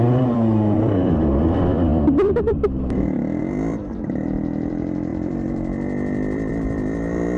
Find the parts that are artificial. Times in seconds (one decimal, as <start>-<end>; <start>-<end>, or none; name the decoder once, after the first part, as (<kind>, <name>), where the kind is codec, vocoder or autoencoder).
0.0-7.4 (vocoder, BigVGAN v2)